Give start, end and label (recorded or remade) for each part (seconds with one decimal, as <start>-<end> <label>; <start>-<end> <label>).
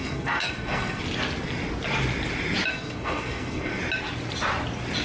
0.0-1.0 remade; 1.0-2.7 recorded; 2.7-3.8 remade; 3.8-5.0 recorded